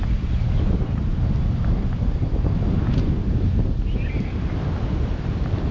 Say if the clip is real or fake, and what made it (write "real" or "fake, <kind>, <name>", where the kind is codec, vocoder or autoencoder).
real